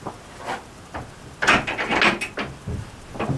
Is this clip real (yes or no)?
yes